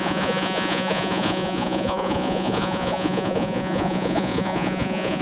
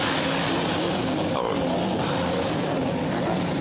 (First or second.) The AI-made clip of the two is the first